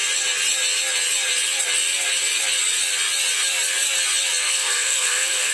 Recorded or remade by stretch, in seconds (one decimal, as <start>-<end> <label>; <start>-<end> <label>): 0.0-4.4 recorded; 4.4-5.5 remade